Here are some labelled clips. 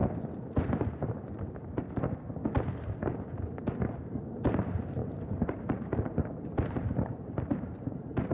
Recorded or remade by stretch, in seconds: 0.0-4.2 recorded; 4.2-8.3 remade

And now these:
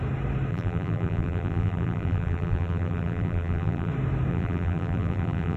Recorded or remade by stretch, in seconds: 0.0-0.5 recorded; 0.5-3.9 remade; 3.9-4.3 recorded; 4.3-5.6 remade